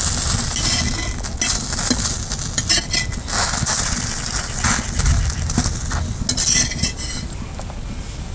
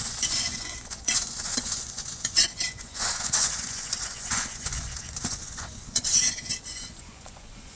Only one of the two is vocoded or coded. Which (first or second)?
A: second